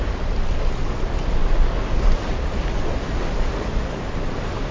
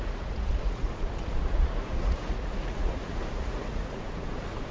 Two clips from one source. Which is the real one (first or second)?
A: first